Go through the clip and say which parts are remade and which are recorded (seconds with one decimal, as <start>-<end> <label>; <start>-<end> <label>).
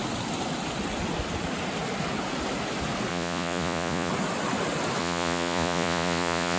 0.0-3.1 recorded; 3.1-4.1 remade; 4.1-5.0 recorded; 5.0-6.6 remade